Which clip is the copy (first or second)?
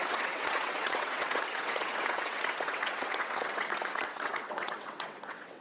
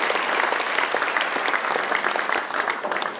first